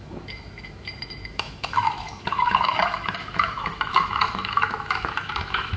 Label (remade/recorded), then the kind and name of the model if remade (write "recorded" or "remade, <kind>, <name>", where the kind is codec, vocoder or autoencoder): remade, autoencoder, DAC-VAE